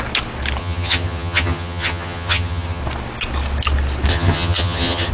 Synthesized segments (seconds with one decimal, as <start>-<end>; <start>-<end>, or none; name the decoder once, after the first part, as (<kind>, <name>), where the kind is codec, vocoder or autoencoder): 0.6-2.8 (vocoder, HiFi-GAN); 4.1-5.1